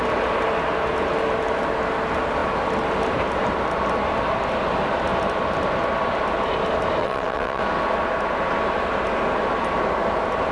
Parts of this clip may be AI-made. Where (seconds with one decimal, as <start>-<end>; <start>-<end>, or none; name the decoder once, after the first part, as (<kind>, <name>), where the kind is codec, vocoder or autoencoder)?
7.0-7.6 (vocoder, WaveNeXt)